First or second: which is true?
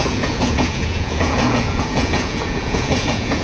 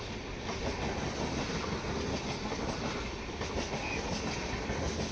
second